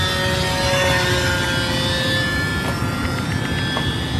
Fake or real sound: real